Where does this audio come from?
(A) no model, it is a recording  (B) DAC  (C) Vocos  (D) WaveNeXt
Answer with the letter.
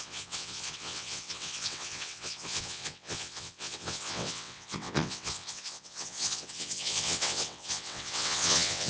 D